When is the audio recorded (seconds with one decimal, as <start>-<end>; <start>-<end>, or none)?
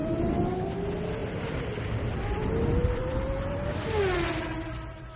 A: 0.0-5.2